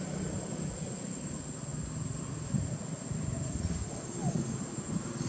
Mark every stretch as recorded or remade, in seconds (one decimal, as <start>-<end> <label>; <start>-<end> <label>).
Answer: 0.0-5.3 recorded